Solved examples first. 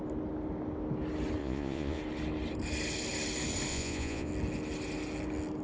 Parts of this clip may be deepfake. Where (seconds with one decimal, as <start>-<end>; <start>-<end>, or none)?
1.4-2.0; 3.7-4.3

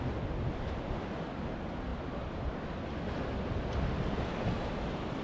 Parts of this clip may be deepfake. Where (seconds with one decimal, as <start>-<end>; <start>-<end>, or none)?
none

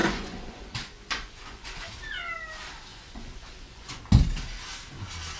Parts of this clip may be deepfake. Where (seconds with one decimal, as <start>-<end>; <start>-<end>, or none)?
0.0-1.9; 2.9-4.0

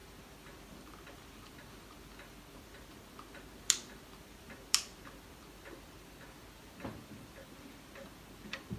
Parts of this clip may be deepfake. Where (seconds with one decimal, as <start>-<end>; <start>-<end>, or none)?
none